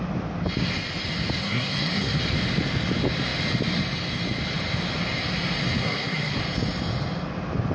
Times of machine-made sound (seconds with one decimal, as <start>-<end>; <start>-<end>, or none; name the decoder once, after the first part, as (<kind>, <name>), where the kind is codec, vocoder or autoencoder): 1.4-2.2 (codec, SNAC); 5.8-6.4